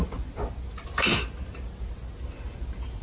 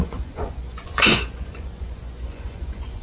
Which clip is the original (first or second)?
first